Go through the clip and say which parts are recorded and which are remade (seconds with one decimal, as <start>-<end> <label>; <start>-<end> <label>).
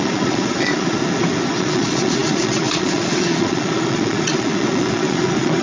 0.0-1.0 remade; 1.0-1.6 recorded; 1.6-5.6 remade